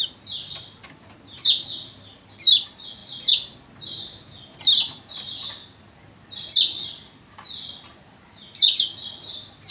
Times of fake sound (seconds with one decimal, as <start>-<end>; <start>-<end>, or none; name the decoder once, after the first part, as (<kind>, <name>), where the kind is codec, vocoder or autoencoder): none